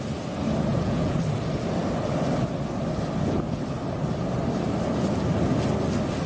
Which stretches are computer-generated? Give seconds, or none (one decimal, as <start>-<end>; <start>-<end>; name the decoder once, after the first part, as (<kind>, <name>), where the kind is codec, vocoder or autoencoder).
0.7-1.2 (vocoder, Vocos)

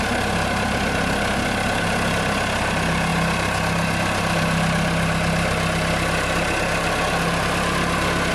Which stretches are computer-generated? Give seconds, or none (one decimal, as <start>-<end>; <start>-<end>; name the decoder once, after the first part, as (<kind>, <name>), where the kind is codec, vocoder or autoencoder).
none